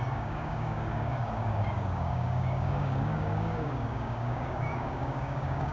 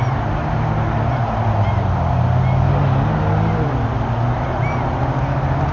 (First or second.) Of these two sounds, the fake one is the first